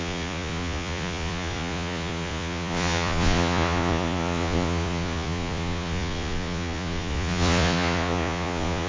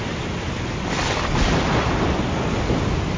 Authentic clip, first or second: second